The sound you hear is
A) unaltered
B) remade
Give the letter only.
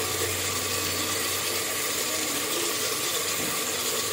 A